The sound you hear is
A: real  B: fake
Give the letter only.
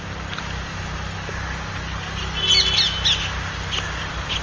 A